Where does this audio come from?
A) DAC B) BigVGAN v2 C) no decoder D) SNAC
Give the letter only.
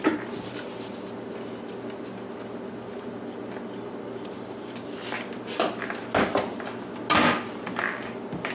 C